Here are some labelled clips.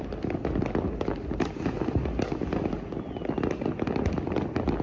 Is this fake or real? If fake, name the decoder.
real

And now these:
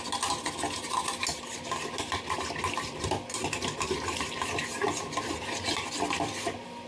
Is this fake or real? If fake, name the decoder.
real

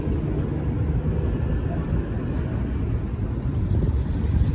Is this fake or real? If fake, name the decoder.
real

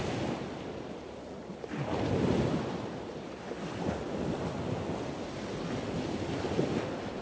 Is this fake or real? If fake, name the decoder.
real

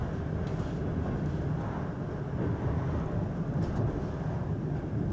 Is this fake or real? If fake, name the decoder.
real